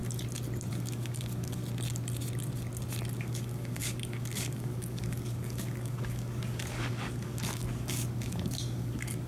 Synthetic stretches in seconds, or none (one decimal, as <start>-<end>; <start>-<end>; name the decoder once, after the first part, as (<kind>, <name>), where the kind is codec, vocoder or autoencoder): 0.7-1.6 (codec, DAC); 3.2-9.3